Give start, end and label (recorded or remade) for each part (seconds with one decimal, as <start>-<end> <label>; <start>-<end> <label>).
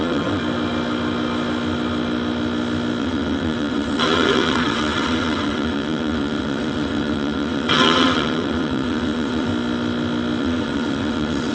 0.0-0.4 remade; 0.4-3.0 recorded; 3.0-9.5 remade; 9.5-10.4 recorded; 10.4-11.5 remade